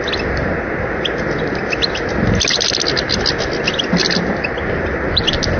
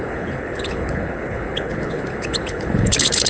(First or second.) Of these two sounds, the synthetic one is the second